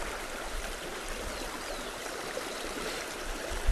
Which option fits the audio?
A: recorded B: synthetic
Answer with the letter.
A